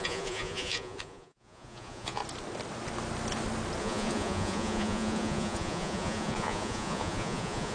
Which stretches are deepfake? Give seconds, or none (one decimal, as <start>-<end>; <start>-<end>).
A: 0.0-2.2; 3.8-7.7

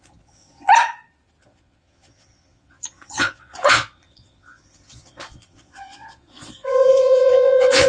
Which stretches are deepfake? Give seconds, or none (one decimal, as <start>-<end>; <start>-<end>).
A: 0.0-0.7; 1.4-7.9

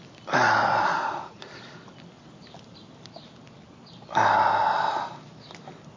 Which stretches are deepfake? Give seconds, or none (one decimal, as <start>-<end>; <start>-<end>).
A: 0.9-1.4

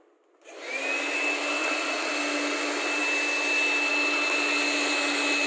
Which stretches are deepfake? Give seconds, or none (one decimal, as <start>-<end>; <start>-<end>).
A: 1.6-2.1

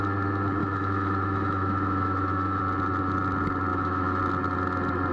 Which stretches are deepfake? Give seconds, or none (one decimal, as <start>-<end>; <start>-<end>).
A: 0.6-2.6; 3.7-4.2

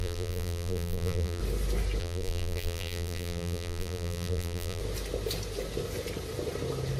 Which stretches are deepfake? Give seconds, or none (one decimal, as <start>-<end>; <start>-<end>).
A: 0.0-1.4; 2.0-4.8